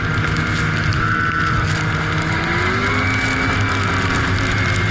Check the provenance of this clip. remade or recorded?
recorded